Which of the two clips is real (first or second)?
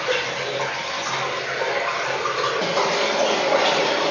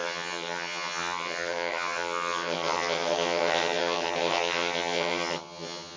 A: first